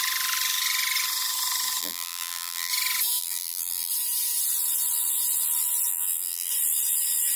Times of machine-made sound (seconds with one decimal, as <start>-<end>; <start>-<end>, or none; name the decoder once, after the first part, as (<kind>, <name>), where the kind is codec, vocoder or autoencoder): 1.8-2.7 (vocoder, BigVGAN v2); 3.2-3.9; 5.9-6.5